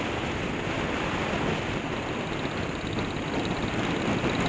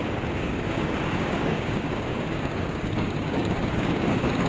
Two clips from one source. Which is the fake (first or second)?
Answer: second